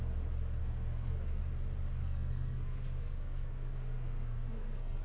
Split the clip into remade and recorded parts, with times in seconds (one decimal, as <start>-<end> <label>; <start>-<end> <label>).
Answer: 0.0-0.6 recorded; 0.6-1.4 remade; 1.4-2.0 recorded; 2.0-5.0 remade